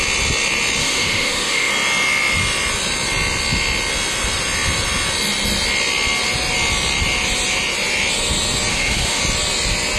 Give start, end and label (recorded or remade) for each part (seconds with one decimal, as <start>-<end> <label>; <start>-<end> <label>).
0.0-0.8 recorded; 0.8-1.7 remade; 1.7-8.7 recorded; 8.7-9.2 remade; 9.2-10.0 recorded